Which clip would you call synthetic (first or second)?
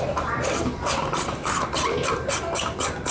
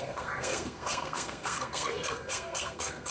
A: second